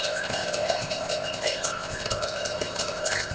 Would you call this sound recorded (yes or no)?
no